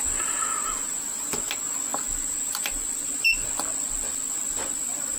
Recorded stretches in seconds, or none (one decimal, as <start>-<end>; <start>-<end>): 0.0-5.2